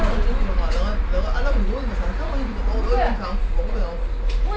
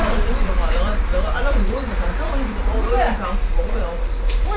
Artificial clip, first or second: second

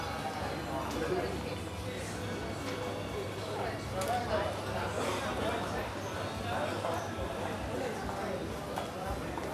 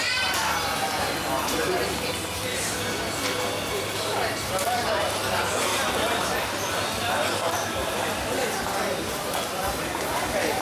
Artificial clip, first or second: second